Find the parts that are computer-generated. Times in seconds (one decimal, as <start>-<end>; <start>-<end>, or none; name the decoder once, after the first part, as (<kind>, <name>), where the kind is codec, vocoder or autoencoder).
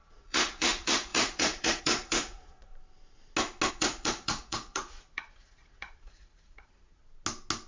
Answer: 0.0-2.7 (vocoder, Vocos); 3.7-7.0